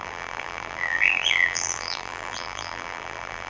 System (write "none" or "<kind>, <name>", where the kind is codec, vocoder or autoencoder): vocoder, BigVGAN v2